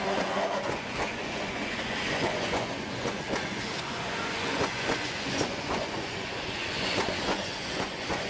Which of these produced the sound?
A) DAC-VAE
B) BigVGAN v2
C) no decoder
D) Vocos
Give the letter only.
D